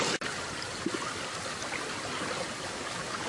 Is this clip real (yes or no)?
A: yes